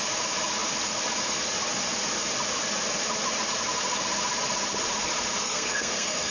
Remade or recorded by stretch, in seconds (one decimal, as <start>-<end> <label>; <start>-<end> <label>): 0.0-5.4 recorded; 5.4-6.3 remade